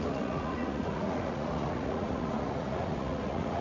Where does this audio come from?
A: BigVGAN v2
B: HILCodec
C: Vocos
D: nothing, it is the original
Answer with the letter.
C